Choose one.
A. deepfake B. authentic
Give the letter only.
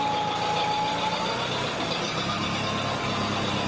B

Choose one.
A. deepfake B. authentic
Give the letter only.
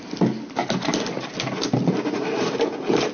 B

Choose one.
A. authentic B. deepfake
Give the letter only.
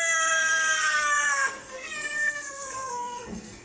B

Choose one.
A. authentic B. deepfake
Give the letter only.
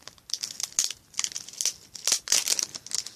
A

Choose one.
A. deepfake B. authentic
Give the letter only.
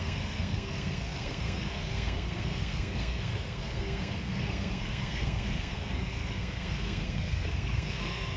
A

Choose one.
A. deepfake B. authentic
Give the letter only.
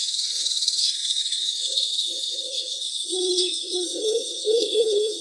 A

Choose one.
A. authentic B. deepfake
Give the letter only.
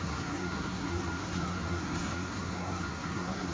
B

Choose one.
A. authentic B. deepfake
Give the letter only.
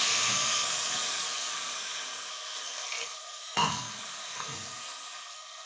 B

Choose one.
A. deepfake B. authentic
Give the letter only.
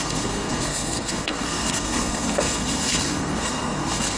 A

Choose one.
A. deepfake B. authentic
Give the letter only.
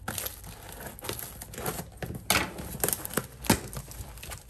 B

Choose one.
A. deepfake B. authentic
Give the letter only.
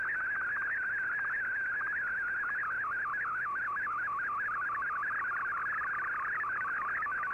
B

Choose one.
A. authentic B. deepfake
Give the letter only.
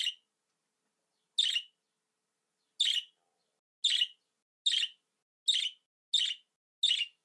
A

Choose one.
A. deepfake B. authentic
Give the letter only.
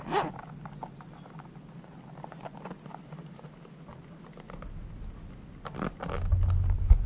B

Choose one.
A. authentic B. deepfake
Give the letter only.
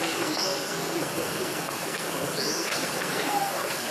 B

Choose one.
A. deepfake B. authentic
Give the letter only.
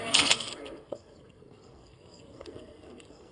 A